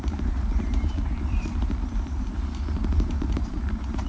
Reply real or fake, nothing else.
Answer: fake